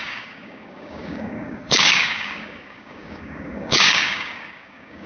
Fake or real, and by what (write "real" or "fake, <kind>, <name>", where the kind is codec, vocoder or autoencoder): fake, codec, DAC